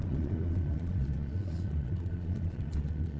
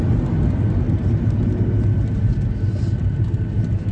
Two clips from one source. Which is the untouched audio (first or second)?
second